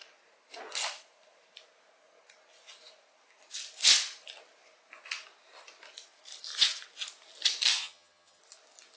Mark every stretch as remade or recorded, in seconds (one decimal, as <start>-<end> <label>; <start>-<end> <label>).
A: 0.0-7.7 recorded; 7.7-8.4 remade; 8.4-9.0 recorded

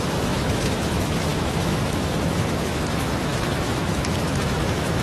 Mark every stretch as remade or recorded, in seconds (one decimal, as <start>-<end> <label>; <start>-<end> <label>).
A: 0.0-5.0 remade

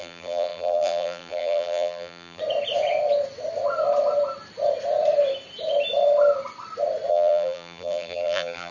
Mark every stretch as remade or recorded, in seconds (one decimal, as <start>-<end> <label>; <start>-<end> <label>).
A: 0.0-2.4 remade; 2.4-7.1 recorded; 7.1-8.7 remade

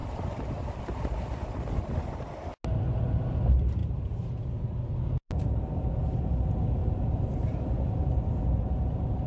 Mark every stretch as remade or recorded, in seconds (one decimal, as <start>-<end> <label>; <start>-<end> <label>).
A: 0.0-0.8 remade; 0.8-3.8 recorded; 3.8-5.7 remade; 5.7-6.8 recorded; 6.8-8.1 remade; 8.1-9.3 recorded

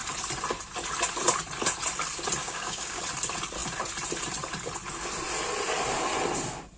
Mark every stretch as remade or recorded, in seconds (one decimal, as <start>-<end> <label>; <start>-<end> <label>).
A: 0.0-2.4 recorded; 2.4-3.0 remade; 3.0-6.8 recorded

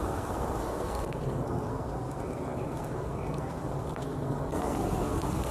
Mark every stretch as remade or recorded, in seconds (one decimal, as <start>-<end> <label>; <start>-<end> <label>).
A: 0.0-5.5 remade